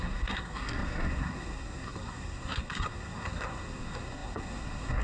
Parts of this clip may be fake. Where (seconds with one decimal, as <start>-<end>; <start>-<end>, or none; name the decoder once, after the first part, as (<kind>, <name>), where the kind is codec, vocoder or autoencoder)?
0.0-5.0 (codec, SNAC)